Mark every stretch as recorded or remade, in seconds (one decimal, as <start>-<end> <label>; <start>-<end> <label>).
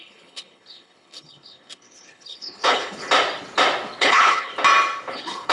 0.0-3.0 remade; 3.0-4.0 recorded; 4.0-4.5 remade; 4.5-5.1 recorded; 5.1-5.5 remade